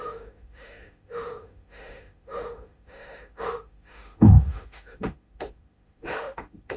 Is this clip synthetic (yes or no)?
yes